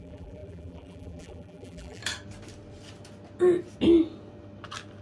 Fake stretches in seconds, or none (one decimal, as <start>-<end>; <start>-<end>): 0.0-2.0